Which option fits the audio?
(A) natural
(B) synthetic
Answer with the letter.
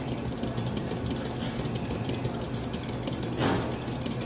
A